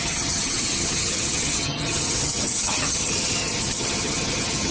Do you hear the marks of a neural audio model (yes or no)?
yes